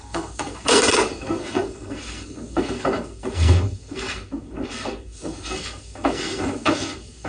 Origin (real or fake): fake